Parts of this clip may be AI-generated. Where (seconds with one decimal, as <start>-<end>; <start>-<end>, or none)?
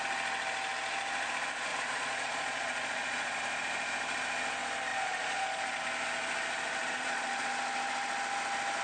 1.7-3.4; 4.9-5.8; 6.8-7.5